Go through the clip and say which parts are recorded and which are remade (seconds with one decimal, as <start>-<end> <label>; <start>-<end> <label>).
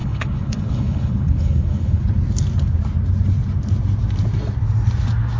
0.0-2.0 remade; 2.0-5.4 recorded